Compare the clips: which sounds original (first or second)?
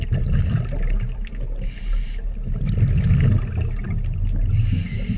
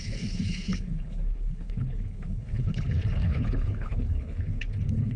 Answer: first